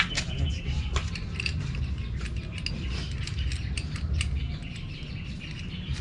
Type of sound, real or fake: real